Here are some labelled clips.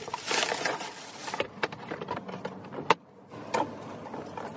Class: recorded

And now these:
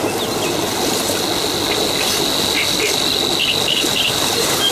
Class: recorded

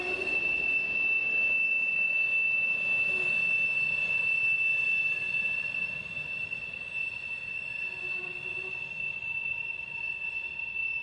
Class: recorded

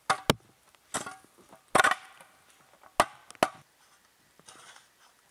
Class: recorded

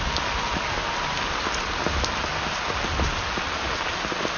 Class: recorded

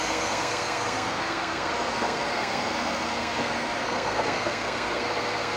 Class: remade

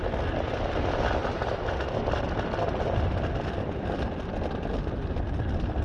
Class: recorded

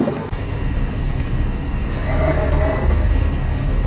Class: remade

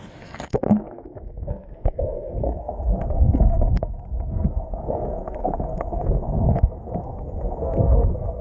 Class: remade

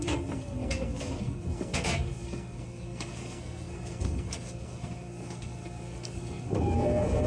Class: remade